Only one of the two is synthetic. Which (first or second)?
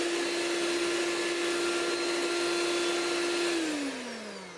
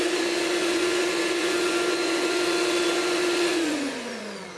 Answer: second